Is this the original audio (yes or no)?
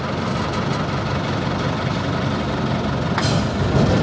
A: yes